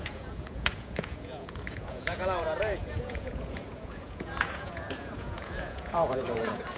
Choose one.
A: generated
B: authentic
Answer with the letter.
A